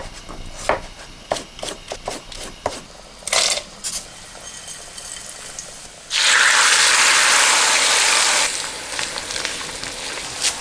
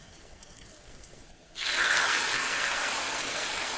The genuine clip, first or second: first